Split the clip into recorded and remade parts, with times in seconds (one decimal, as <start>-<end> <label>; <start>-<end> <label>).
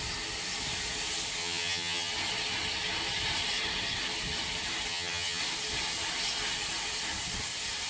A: 0.0-1.4 recorded; 1.4-2.1 remade; 2.1-4.9 recorded; 4.9-5.4 remade; 5.4-7.9 recorded